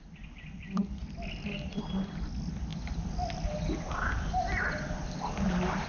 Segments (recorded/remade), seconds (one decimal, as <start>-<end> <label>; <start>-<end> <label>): 0.0-5.9 recorded

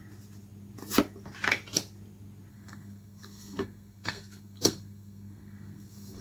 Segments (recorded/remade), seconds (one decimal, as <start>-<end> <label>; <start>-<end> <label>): 0.0-2.5 recorded; 2.5-6.2 remade

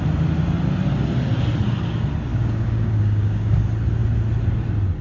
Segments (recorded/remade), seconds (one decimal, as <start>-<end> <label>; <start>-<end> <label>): 0.0-2.3 recorded; 2.3-3.6 remade; 3.6-5.0 recorded

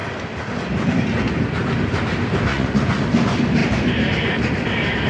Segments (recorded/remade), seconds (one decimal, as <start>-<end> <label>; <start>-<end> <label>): 0.0-2.5 recorded; 2.5-3.0 remade; 3.0-5.1 recorded

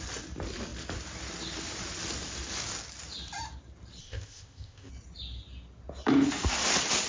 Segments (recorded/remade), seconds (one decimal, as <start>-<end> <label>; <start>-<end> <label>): 0.0-4.0 recorded; 4.0-4.9 remade; 4.9-7.1 recorded

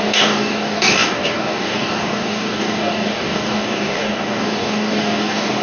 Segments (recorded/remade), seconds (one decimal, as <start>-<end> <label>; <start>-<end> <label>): 0.0-5.6 remade